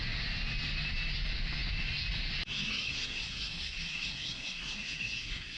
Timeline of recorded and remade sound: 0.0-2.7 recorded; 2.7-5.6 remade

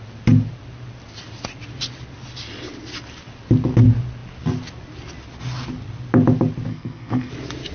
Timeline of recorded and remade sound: 0.0-6.7 recorded; 6.7-7.3 remade; 7.3-7.7 recorded

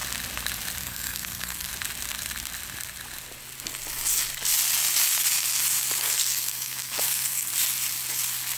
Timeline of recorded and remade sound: 0.0-0.8 recorded; 0.8-1.7 remade; 1.7-6.0 recorded; 6.0-7.5 remade; 7.5-8.6 recorded

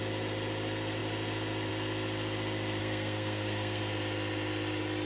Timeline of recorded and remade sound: 0.0-2.8 recorded; 2.8-3.8 remade; 3.8-5.1 recorded

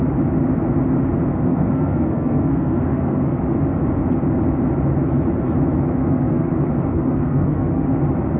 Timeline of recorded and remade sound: 0.0-1.3 recorded; 1.3-3.4 remade; 3.4-6.0 recorded; 6.0-6.5 remade; 6.5-6.9 recorded; 6.9-8.0 remade; 8.0-8.4 recorded